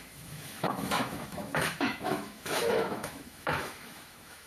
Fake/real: fake